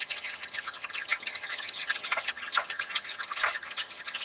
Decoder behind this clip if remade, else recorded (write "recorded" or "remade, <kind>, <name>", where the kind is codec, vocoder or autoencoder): remade, vocoder, HiFi-GAN